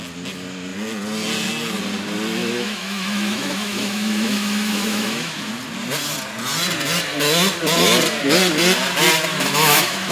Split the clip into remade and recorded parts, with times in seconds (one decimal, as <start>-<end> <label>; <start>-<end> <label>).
0.0-2.4 recorded; 2.4-5.5 remade; 5.5-9.3 recorded; 9.3-10.1 remade